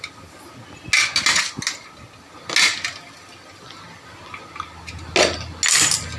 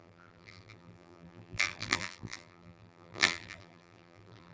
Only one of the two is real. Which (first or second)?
first